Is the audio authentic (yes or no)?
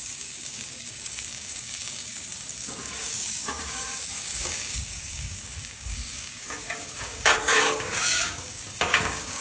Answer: no